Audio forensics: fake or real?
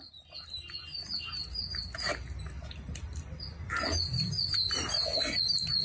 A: real